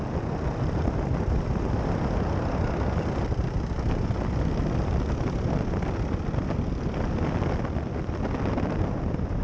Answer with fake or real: real